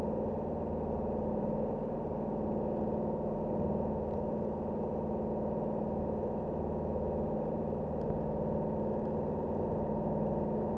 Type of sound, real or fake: real